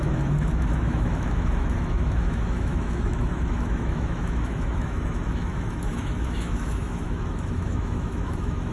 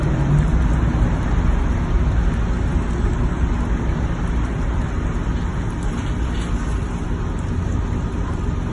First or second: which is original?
second